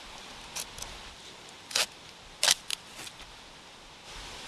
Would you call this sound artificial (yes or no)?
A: no